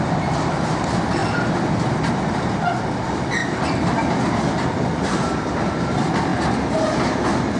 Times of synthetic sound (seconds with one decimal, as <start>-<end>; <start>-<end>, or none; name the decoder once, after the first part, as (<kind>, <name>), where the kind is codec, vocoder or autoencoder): none